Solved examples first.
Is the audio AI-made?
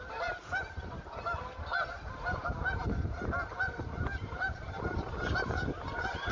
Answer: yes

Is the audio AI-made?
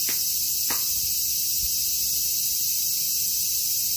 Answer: no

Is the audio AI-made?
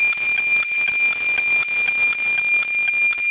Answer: no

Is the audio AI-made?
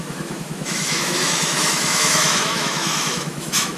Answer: yes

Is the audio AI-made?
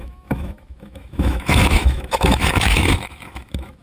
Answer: yes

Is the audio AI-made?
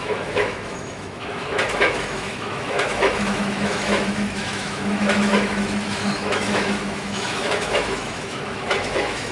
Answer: yes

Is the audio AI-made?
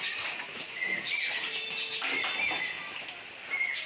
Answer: no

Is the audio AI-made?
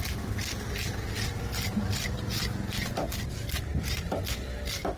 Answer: no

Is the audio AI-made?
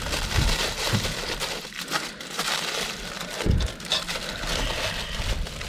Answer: no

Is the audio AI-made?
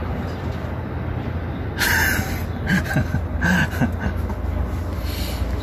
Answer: no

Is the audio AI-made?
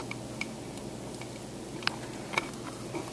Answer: no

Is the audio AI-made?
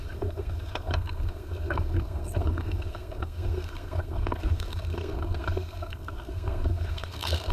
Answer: yes